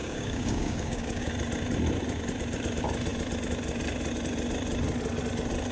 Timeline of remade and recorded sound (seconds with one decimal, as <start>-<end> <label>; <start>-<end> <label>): 0.0-1.3 remade; 1.3-5.7 recorded